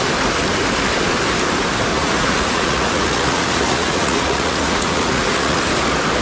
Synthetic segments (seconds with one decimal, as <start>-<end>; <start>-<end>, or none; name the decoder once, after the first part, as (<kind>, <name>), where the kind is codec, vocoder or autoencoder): 1.9-5.6 (vocoder, Vocos)